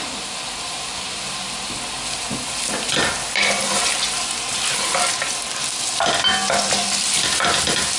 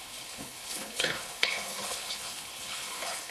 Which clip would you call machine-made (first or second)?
second